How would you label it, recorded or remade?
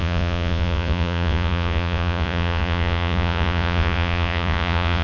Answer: remade